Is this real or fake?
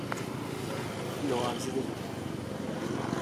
real